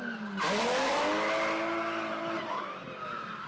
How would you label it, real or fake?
real